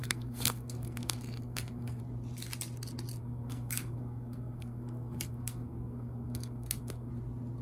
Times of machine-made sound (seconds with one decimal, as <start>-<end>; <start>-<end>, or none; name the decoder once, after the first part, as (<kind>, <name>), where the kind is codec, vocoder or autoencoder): 0.0-2.0 (codec, SNAC); 3.2-7.1

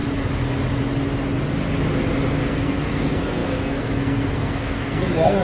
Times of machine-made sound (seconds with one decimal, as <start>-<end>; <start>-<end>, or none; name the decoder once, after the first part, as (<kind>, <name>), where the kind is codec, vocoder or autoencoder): 2.4-5.4 (codec, SNAC)